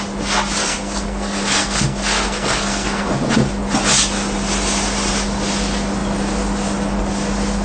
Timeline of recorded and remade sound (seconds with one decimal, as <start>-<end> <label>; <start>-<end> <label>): 0.0-0.6 recorded; 0.6-3.1 remade; 3.1-7.6 recorded